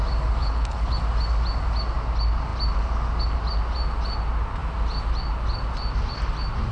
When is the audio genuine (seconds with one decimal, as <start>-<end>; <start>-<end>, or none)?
0.0-0.4; 1.0-6.7